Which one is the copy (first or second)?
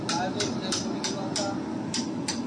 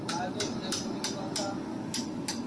second